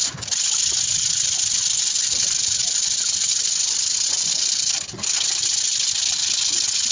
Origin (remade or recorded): recorded